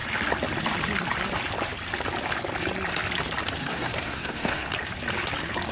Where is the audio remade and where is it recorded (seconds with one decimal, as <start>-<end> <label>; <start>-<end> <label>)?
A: 0.0-3.6 recorded; 3.6-4.7 remade; 4.7-5.7 recorded